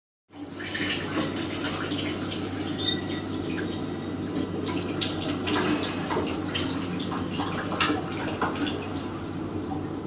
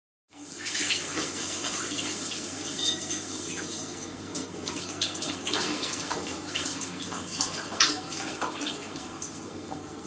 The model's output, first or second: second